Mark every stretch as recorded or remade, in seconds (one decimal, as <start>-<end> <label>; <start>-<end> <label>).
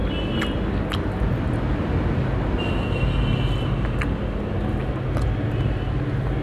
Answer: 0.0-6.4 recorded